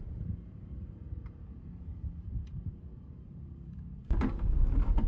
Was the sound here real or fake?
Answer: fake